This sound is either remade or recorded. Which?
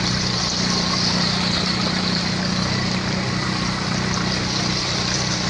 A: recorded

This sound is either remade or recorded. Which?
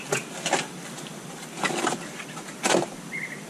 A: recorded